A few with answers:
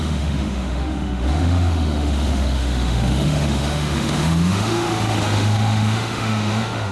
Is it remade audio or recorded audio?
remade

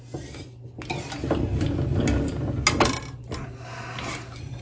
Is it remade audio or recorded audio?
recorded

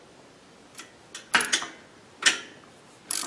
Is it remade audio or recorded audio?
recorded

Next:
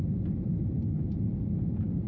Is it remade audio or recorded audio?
recorded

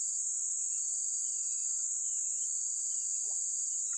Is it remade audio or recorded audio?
recorded